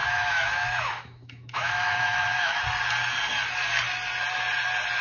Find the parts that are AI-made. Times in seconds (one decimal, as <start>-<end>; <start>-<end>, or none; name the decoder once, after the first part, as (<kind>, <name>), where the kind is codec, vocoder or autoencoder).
0.0-2.6 (autoencoder, DAC-VAE)